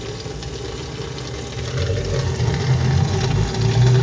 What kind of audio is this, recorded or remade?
recorded